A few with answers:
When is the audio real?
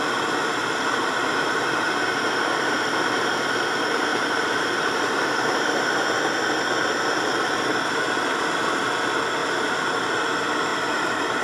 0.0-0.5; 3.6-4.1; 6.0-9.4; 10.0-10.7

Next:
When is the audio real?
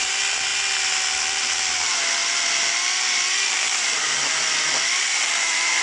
0.5-1.3; 2.2-3.6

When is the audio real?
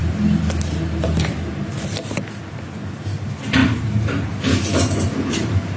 0.0-5.8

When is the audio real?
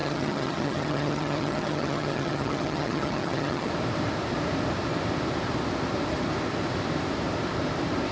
3.7-8.1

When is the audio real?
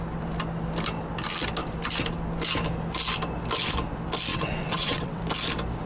0.0-4.3; 5.2-5.9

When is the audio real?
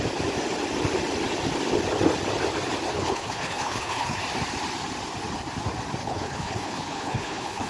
0.0-2.9; 4.2-6.0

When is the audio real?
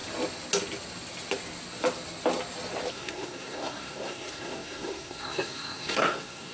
0.0-2.9